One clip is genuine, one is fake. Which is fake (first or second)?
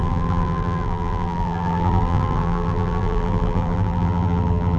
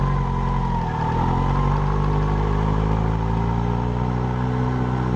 first